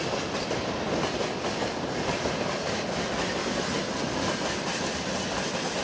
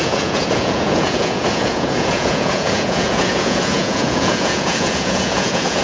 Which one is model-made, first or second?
second